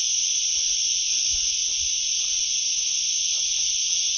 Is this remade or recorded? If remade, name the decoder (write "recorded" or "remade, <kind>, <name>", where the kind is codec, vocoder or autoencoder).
remade, vocoder, BigVGAN v2